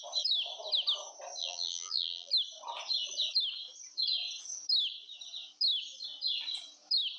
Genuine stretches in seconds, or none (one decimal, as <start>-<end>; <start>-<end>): 0.0-1.4; 2.3-7.2